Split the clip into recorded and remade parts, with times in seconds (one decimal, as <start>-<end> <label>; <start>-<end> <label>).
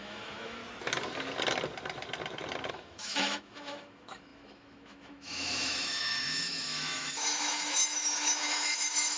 0.0-0.6 remade; 0.6-2.7 recorded; 2.7-9.2 remade